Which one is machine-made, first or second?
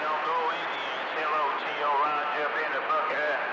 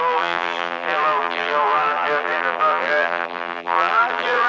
second